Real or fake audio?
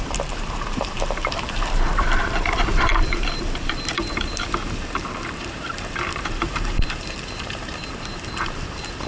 fake